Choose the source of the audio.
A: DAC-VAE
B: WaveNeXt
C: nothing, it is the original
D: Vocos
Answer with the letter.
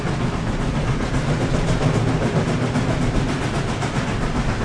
C